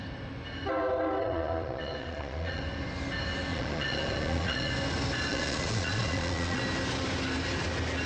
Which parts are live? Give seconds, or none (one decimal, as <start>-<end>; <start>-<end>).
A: 0.0-1.2; 2.6-3.5; 4.7-5.3; 6.6-8.1